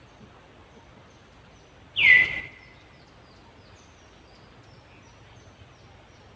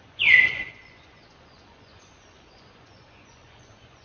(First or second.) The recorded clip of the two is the first